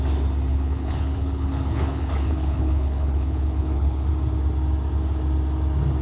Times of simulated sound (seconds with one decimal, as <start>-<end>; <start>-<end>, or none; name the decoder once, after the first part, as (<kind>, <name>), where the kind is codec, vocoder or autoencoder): 0.5-4.1 (codec, HILCodec)